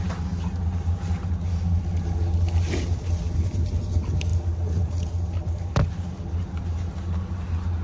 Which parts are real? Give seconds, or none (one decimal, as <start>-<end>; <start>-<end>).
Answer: 0.0-7.8